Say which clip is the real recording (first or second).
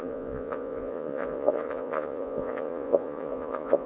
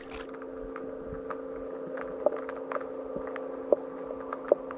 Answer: second